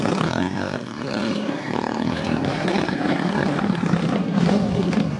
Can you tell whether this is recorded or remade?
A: remade